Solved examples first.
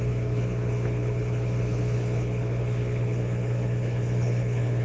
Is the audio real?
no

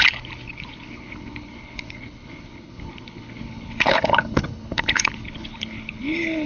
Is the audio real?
no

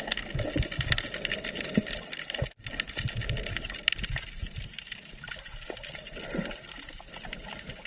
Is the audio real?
yes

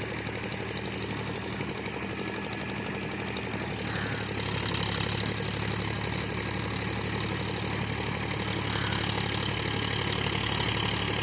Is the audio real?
yes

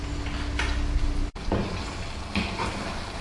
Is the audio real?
yes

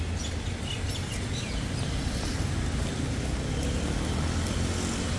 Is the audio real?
yes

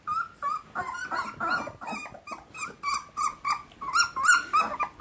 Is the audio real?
yes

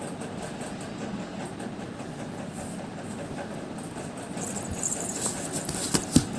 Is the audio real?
yes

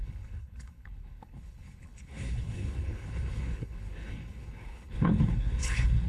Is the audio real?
no